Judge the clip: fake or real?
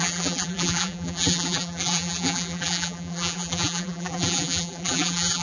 fake